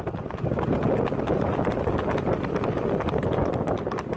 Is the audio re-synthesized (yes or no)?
no